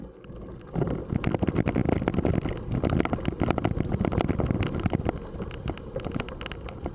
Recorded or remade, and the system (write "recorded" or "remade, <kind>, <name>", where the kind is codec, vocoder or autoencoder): recorded